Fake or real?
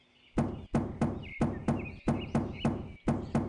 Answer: real